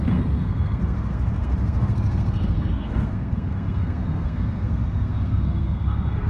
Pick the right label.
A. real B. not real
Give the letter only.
B